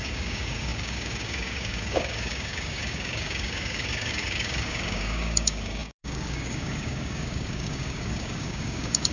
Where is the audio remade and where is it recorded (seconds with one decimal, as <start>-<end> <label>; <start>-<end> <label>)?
0.0-9.1 remade